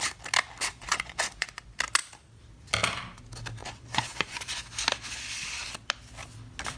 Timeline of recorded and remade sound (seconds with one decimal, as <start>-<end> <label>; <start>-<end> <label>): 0.0-0.7 recorded; 0.7-1.6 remade; 1.6-3.6 recorded; 3.6-4.6 remade; 4.6-6.8 recorded